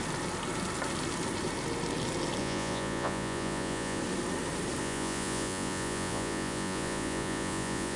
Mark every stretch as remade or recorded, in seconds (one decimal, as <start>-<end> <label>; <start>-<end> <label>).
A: 0.0-2.4 recorded; 2.4-4.0 remade; 4.0-4.8 recorded; 4.8-8.0 remade